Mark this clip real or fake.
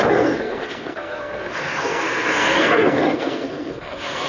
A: fake